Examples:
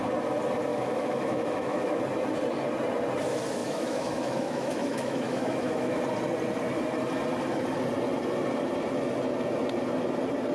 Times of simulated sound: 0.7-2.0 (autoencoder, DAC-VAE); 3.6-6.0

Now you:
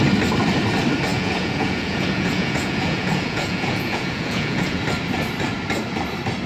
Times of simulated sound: 1.1-4.8 (vocoder, Vocos)

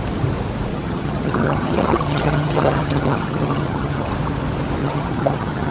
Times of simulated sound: 0.7-4.1 (vocoder, HiFi-GAN); 4.8-5.7

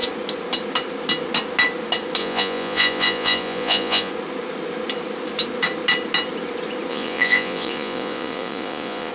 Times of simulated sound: 2.2-4.1 (vocoder, Vocos); 6.9-9.1

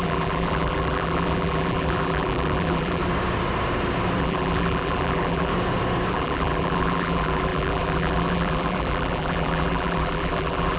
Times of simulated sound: 0.0-3.0 (vocoder, BigVGAN v2); 4.2-5.5; 6.1-10.8

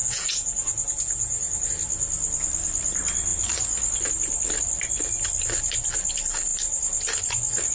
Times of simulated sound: 0.0-1.7 (vocoder, Vocos)

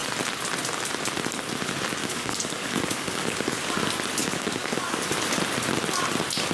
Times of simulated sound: 2.0-3.6 (codec, DAC); 4.2-5.0

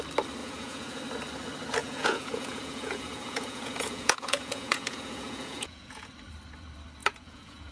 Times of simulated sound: 0.4-1.0 (vocoder, Vocos); 1.8-6.1; 7.0-7.7